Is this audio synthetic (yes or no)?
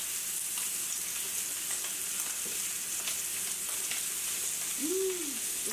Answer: no